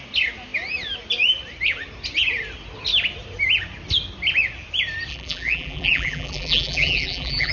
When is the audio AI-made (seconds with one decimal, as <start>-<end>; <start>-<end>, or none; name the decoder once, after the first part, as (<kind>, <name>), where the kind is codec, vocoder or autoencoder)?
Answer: 5.1-7.5 (vocoder, BigVGAN v2)